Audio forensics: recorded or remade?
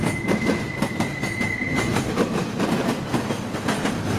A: recorded